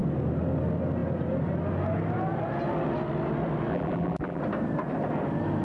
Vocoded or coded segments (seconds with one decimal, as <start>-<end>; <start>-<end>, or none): 3.7-4.4